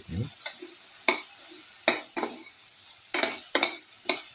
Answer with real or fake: real